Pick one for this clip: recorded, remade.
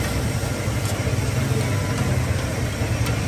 recorded